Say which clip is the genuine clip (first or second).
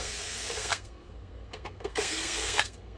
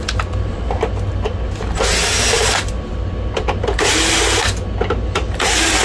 second